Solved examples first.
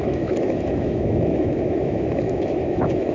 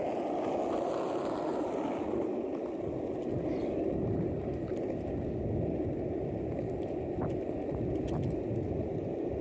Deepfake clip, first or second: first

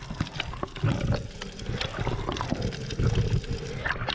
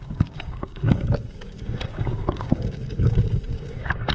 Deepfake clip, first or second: second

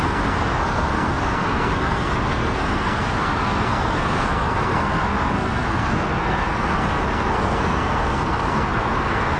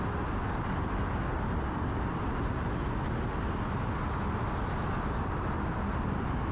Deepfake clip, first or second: first